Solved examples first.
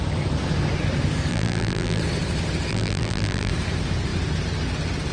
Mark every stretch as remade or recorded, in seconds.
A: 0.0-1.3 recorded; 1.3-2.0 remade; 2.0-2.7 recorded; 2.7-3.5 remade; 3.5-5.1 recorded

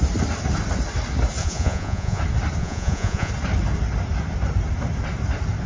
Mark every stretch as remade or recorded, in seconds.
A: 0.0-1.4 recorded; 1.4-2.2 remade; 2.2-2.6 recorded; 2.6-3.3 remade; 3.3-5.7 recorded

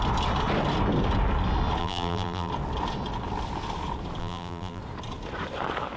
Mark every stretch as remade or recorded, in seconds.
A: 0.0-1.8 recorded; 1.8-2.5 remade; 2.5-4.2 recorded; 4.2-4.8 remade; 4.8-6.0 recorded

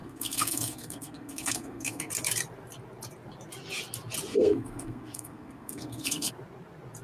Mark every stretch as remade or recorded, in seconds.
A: 0.0-2.1 remade; 2.1-4.3 recorded; 4.3-6.3 remade; 6.3-7.0 recorded

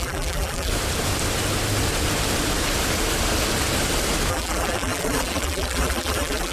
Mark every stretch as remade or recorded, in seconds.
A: 0.0-0.7 remade; 0.7-4.3 recorded; 4.3-6.5 remade

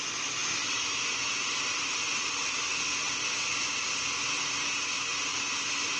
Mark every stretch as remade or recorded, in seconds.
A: 0.0-6.0 recorded

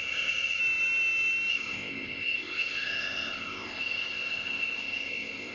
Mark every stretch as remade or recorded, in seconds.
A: 0.0-0.6 remade; 0.6-1.5 recorded; 1.5-5.5 remade